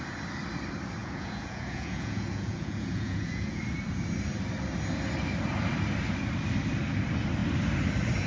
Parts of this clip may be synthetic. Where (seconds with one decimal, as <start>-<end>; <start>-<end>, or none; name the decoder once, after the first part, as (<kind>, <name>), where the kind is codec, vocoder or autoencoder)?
1.0-3.6 (vocoder, Vocos)